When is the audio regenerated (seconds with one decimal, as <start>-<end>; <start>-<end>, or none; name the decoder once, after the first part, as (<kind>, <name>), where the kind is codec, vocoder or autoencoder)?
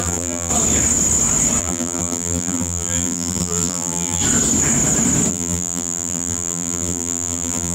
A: 0.0-0.5 (vocoder, BigVGAN v2); 1.6-4.2; 5.3-7.7